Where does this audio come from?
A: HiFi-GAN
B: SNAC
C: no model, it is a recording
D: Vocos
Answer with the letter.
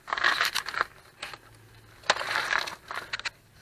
C